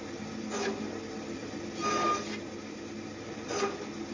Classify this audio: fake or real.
real